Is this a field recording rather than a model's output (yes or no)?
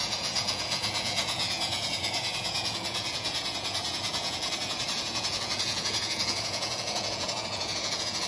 no